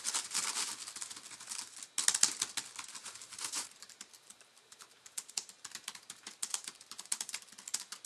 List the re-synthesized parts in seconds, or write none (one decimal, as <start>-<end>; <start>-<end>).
3.0-7.5